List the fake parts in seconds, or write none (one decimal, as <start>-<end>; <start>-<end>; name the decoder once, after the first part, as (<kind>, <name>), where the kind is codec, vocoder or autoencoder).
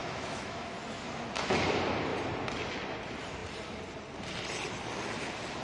0.0-0.7 (autoencoder, DAC-VAE)